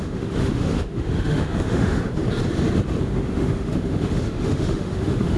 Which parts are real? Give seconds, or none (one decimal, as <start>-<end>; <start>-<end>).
2.2-3.0